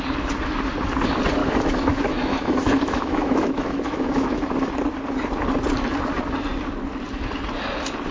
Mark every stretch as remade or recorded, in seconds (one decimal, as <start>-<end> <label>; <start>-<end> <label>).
0.0-1.4 recorded; 1.4-4.7 remade; 4.7-8.1 recorded